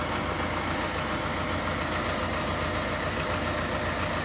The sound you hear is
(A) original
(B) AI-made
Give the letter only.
A